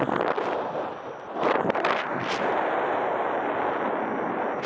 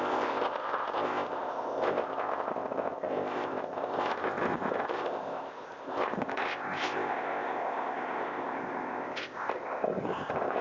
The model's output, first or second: second